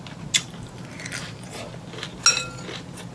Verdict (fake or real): real